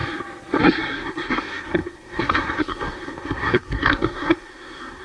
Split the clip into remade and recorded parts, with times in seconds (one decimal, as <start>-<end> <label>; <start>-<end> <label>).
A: 0.0-0.6 recorded; 0.6-5.0 remade

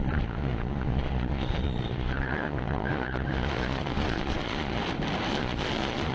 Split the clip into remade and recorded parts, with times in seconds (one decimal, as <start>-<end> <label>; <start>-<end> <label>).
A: 0.0-4.8 remade; 4.8-5.3 recorded; 5.3-6.1 remade